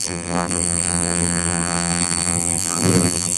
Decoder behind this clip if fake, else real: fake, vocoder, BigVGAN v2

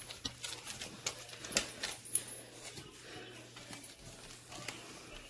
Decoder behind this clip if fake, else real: real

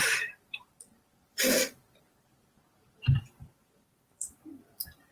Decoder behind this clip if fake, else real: fake, vocoder, BigVGAN v2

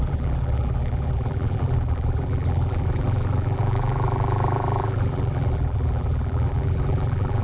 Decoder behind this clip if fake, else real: fake, vocoder, BigVGAN v2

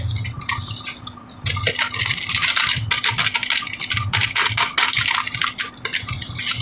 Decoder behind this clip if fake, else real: real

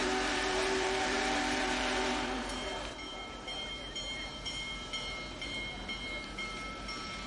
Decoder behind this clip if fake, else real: fake, vocoder, BigVGAN v2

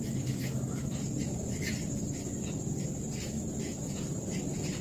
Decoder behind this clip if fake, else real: real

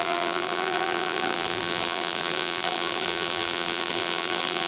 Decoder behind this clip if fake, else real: fake, vocoder, BigVGAN v2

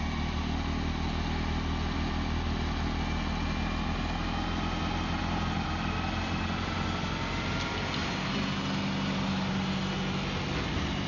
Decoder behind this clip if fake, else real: real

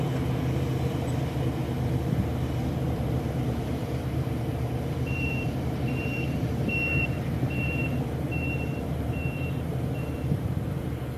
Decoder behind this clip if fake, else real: fake, vocoder, BigVGAN v2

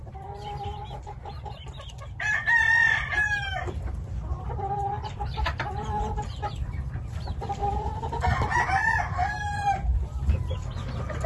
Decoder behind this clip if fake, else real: fake, vocoder, BigVGAN v2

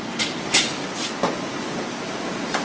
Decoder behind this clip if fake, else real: real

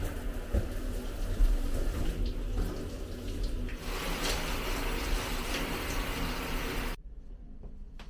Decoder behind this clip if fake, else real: fake, vocoder, BigVGAN v2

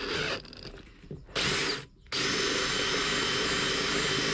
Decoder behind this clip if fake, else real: real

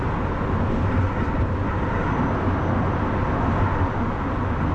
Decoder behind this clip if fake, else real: real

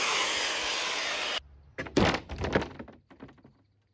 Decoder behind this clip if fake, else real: real